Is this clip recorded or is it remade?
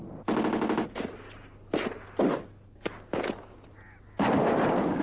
recorded